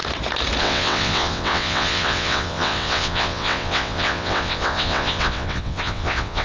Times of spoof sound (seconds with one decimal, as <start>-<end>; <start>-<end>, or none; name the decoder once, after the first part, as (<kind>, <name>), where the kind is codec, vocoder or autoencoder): 0.6-6.4 (vocoder, WaveNeXt)